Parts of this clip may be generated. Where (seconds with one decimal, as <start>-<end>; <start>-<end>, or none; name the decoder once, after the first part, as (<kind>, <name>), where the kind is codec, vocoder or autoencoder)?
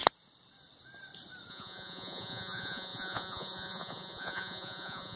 1.5-5.2 (vocoder, Vocos)